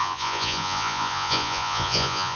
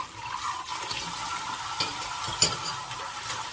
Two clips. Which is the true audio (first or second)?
second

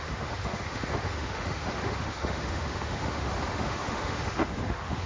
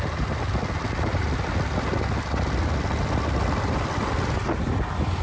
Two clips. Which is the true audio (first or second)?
second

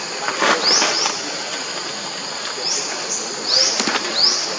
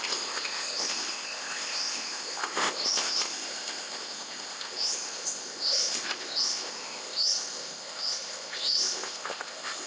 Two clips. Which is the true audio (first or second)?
first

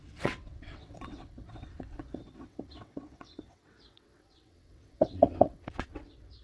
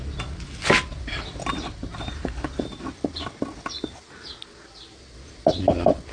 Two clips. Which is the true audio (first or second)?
second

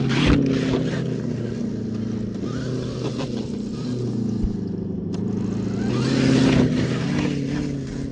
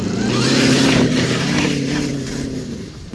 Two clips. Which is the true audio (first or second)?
first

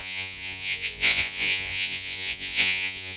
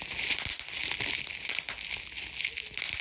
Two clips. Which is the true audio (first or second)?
second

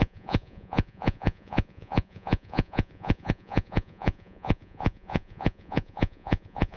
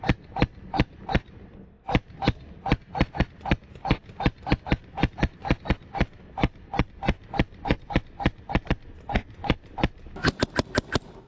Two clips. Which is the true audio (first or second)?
second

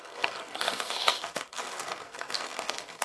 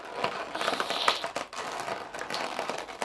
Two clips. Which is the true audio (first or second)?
second